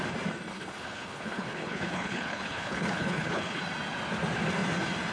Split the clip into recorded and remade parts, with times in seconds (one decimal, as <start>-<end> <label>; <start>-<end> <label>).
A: 0.0-0.5 recorded; 0.5-3.6 remade; 3.6-5.1 recorded